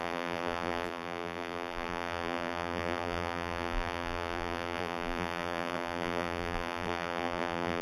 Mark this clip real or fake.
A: fake